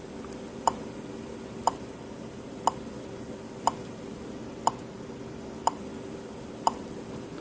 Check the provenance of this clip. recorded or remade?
recorded